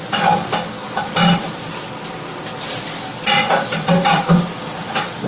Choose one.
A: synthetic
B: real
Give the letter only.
B